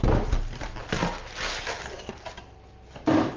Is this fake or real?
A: real